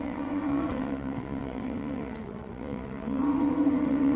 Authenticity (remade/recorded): remade